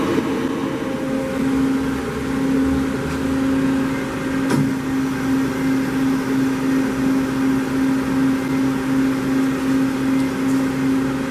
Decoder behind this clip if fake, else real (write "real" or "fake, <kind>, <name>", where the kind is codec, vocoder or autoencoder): real